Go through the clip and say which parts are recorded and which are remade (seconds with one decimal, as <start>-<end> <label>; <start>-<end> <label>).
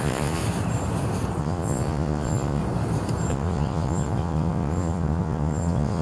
0.0-0.4 remade; 0.4-1.4 recorded; 1.4-2.6 remade; 2.6-3.3 recorded; 3.3-6.0 remade